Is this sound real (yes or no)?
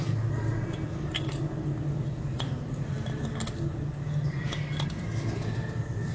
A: yes